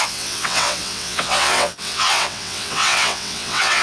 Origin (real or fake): fake